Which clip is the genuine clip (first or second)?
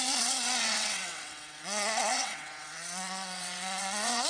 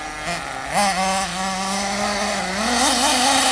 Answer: second